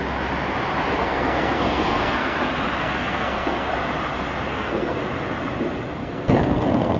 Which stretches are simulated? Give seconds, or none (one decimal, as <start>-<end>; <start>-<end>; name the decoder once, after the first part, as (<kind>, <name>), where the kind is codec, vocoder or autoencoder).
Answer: 1.0-2.4 (codec, SNAC); 2.8-3.7; 4.5-5.0; 6.0-7.0